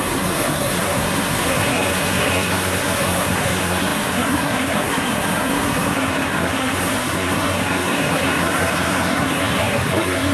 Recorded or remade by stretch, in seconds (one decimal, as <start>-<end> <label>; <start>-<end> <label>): 0.0-10.3 remade